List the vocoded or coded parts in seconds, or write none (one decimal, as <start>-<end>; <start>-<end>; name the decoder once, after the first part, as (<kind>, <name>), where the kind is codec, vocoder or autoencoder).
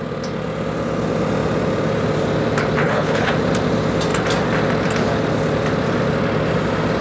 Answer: 2.8-3.3 (codec, HILCodec)